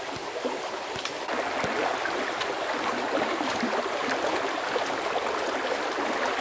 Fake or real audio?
real